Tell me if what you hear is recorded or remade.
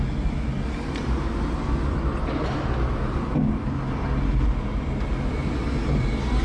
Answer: recorded